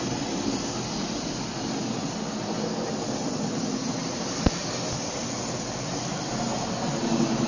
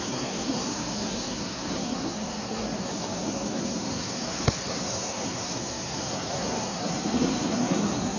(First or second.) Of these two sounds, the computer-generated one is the second